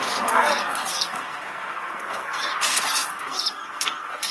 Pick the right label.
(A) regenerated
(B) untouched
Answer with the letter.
A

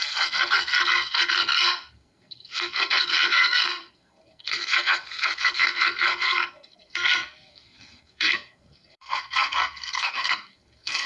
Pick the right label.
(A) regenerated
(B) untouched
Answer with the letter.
A